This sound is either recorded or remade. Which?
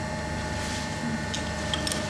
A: recorded